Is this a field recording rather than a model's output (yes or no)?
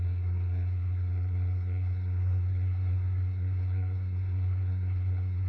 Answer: no